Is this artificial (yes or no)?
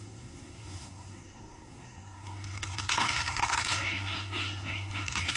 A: yes